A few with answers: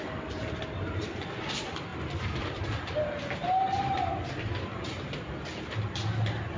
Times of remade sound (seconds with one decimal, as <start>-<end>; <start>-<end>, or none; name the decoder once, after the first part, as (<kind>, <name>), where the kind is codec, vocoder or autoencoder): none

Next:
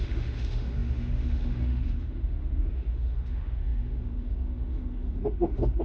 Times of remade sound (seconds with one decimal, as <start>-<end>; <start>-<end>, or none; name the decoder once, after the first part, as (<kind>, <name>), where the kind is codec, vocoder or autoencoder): 0.0-5.8 (autoencoder, DAC-VAE)

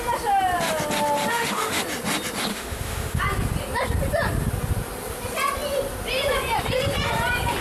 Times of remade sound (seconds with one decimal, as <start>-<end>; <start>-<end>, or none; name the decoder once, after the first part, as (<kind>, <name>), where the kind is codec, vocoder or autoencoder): 1.3-1.8 (autoencoder, DAC-VAE); 2.5-3.2